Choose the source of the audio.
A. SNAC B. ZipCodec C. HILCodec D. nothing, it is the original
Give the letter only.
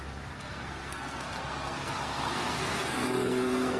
A